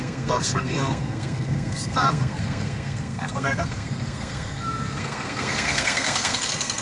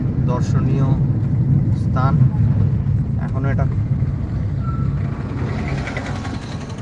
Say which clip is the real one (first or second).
second